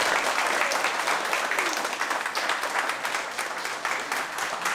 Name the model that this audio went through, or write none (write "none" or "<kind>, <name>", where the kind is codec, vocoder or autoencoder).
none